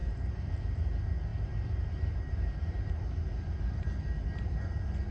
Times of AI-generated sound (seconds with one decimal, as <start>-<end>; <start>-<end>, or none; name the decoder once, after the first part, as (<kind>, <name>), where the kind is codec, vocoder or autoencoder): 0.0-0.6 (vocoder, BigVGAN v2); 1.3-2.9